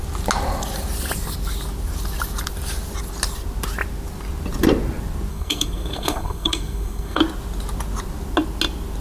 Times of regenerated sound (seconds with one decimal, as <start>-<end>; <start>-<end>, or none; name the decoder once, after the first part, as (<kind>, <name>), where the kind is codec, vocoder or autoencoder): 5.3-7.2 (codec, SNAC)